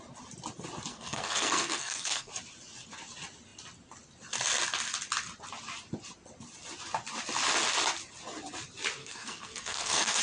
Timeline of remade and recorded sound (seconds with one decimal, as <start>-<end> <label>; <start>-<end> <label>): 0.0-0.9 recorded; 0.9-2.3 remade; 2.3-9.0 recorded; 9.0-10.2 remade